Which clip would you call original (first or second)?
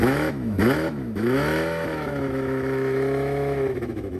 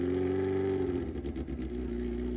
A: second